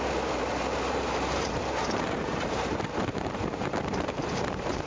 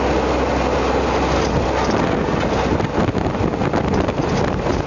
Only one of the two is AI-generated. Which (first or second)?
first